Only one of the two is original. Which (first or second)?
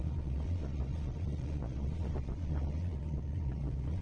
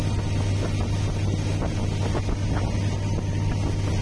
second